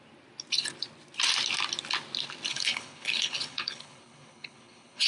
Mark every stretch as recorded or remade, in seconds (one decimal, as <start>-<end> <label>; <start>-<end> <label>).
0.0-2.5 recorded; 2.5-5.1 remade